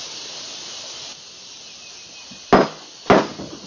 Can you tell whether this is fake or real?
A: real